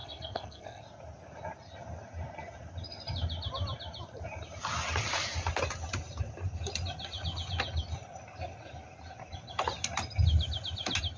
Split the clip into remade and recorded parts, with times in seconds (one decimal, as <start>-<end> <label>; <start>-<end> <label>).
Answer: 0.0-0.8 remade; 0.8-11.2 recorded

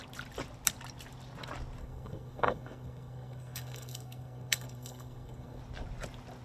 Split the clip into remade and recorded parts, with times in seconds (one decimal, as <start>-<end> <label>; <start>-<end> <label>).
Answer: 0.0-1.8 recorded; 1.8-5.6 remade; 5.6-6.4 recorded

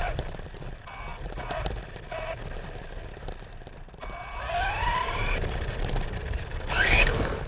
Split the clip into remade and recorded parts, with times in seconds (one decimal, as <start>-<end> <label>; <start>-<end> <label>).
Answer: 0.0-6.5 recorded; 6.5-7.5 remade

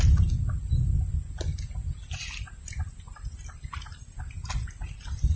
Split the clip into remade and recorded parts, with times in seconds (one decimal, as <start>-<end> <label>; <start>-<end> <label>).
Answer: 0.0-5.4 recorded

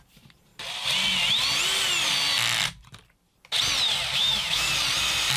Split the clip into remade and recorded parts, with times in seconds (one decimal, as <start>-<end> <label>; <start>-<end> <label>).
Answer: 0.0-4.2 recorded; 4.2-4.7 remade; 4.7-5.4 recorded

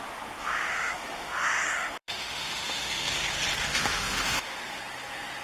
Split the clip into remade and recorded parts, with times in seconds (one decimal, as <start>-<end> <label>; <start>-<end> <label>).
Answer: 0.0-0.4 recorded; 0.4-3.1 remade; 3.1-3.7 recorded; 3.7-4.8 remade; 4.8-5.4 recorded

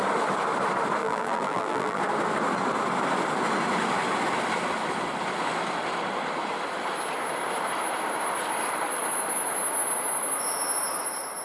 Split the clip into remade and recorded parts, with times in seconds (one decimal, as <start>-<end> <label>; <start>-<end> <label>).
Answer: 0.0-1.0 recorded; 1.0-2.0 remade; 2.0-11.4 recorded

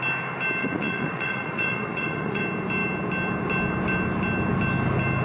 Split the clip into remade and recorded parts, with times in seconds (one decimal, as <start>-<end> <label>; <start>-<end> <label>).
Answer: 0.0-0.6 recorded; 0.6-2.4 remade; 2.4-5.2 recorded